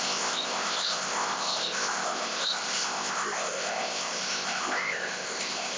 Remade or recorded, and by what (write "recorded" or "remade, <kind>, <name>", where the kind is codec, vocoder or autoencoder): remade, codec, ZipCodec